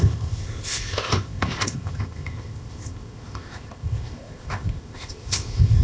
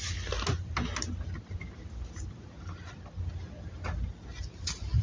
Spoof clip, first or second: first